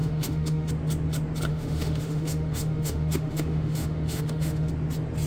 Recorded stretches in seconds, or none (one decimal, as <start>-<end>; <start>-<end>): 0.7-1.5; 4.7-5.3